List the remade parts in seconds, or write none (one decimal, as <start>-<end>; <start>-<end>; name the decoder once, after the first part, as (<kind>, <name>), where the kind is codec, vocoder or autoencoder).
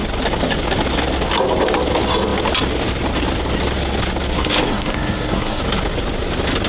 4.3-5.6 (codec, SNAC)